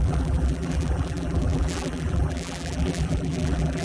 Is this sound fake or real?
fake